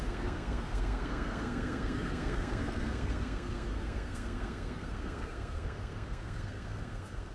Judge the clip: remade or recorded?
remade